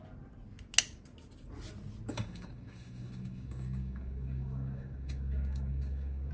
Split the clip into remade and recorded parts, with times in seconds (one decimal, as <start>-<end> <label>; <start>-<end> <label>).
0.0-2.1 recorded; 2.1-6.3 remade